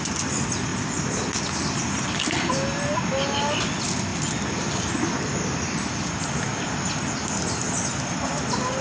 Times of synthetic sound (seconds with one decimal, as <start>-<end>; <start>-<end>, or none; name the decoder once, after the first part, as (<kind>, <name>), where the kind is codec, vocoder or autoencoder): none